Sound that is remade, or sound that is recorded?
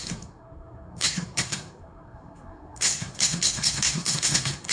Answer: remade